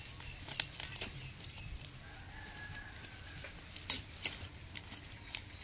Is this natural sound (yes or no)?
no